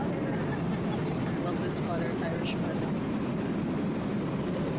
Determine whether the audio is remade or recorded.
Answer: recorded